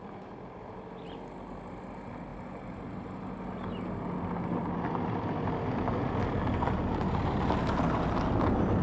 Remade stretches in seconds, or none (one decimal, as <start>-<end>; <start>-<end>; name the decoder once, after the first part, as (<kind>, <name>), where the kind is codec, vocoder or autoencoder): none